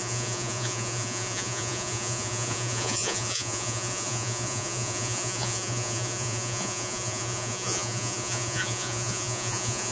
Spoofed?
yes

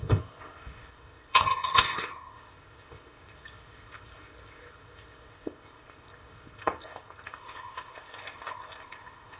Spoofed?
yes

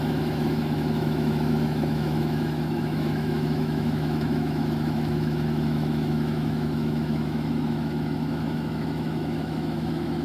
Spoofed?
yes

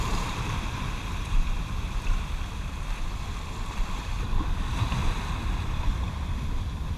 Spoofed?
yes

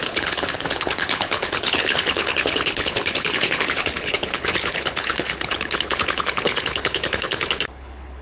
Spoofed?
yes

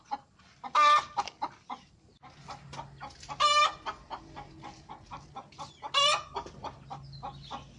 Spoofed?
no